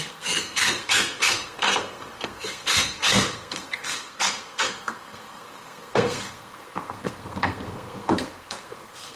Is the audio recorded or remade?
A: remade